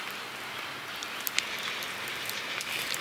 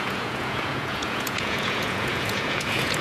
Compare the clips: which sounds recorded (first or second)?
first